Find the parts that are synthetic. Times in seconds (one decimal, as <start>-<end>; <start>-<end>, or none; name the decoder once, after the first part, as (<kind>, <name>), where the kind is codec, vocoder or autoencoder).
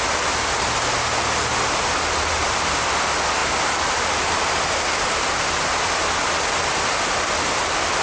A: none